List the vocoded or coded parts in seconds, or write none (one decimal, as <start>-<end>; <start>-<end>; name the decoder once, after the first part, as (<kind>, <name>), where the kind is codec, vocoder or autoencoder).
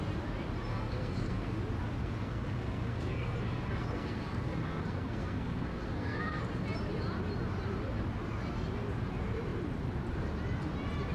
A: 0.7-1.6 (codec, SNAC); 2.0-6.4